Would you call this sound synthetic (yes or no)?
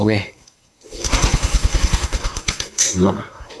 yes